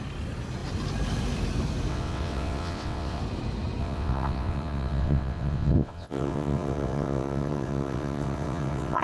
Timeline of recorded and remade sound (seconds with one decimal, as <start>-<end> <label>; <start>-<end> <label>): 0.0-1.9 recorded; 1.9-3.2 remade; 3.2-3.8 recorded; 3.8-9.0 remade